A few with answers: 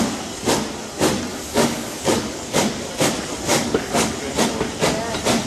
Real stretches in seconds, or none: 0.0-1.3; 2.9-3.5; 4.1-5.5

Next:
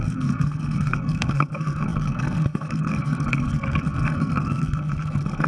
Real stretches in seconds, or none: none

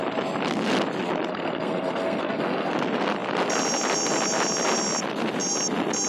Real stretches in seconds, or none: 0.0-1.3; 2.7-6.1

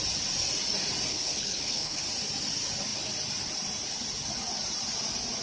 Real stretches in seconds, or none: 0.0-1.1; 2.0-5.4

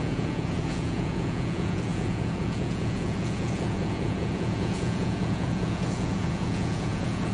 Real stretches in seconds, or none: none

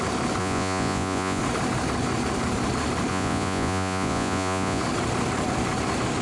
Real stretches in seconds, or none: 0.0-0.4; 1.4-3.1; 4.8-6.2

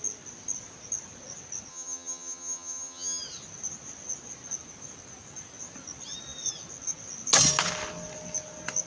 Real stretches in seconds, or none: 0.0-1.7; 3.2-8.9

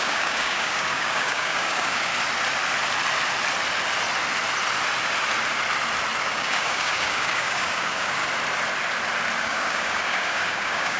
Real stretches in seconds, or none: 2.1-6.2; 8.2-9.4